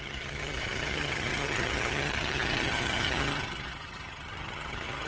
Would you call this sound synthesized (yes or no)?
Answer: yes